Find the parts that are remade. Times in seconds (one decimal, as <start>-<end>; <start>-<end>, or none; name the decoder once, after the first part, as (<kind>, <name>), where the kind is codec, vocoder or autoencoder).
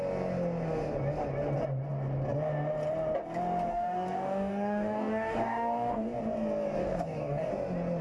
3.7-6.2 (codec, DAC); 6.8-7.5